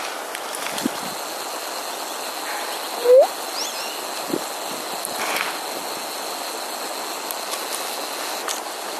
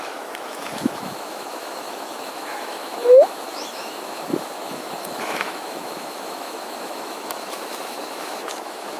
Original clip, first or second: first